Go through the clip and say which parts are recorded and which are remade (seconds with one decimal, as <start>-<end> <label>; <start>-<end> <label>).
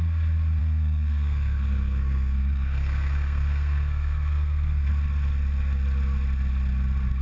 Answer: 0.0-0.6 recorded; 0.6-4.9 remade; 4.9-7.2 recorded